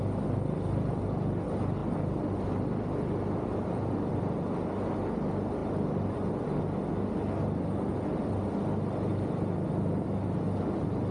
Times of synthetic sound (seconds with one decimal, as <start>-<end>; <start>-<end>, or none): none